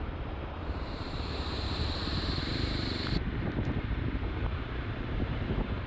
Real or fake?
fake